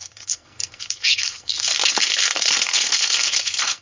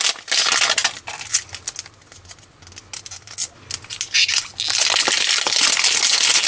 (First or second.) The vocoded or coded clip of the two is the first